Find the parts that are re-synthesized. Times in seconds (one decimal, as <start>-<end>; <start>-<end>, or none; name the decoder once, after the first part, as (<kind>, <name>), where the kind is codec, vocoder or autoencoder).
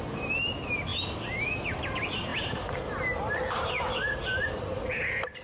none